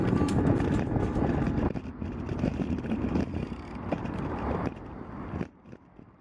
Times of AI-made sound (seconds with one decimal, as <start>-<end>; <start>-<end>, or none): 2.3-6.2